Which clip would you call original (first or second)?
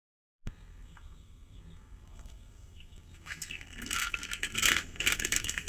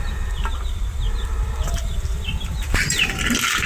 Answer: second